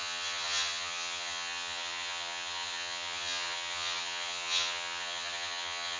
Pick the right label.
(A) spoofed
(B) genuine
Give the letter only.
A